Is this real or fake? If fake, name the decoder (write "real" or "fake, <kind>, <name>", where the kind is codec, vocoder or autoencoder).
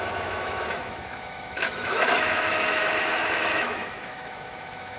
fake, autoencoder, DAC-VAE